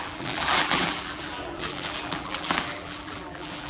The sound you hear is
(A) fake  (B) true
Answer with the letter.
A